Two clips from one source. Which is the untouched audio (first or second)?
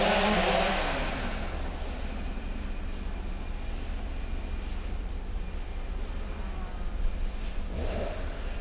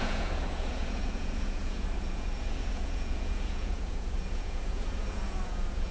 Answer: first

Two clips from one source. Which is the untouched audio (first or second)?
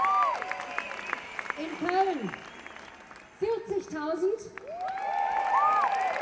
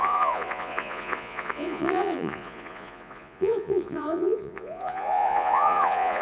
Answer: first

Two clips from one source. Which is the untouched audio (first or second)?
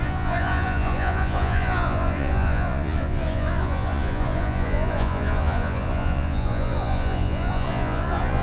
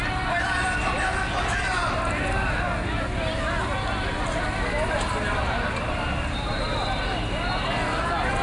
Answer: second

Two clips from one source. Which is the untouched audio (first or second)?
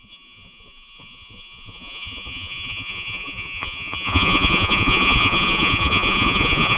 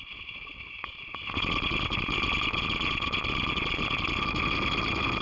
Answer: second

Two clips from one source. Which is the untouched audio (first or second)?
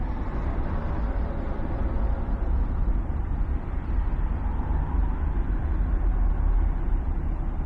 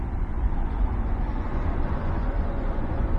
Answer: first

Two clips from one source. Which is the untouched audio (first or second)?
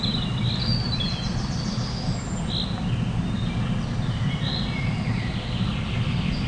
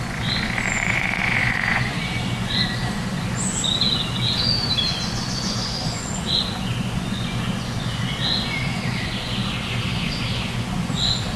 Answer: first